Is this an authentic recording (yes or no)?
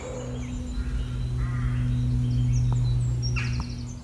yes